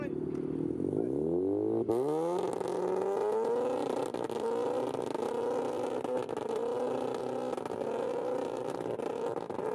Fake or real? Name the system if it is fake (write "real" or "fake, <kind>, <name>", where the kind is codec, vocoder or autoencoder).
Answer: real